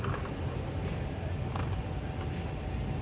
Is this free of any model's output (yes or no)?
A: yes